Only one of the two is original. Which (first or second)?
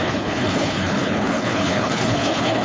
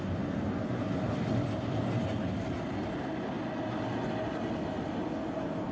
second